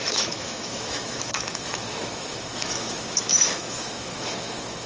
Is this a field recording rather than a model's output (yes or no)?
no